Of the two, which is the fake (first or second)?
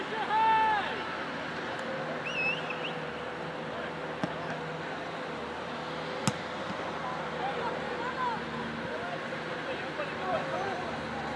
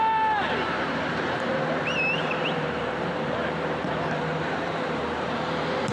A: second